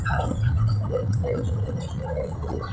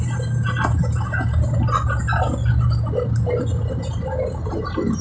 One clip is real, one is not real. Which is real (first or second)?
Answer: second